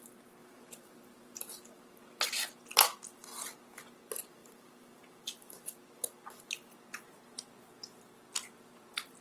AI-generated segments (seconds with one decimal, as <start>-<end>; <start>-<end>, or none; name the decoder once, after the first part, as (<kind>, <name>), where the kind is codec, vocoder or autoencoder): 0.4-1.5 (vocoder, BigVGAN v2); 4.4-5.8